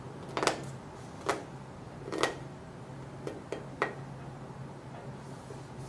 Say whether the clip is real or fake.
real